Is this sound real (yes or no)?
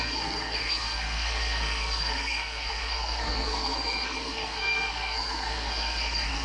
no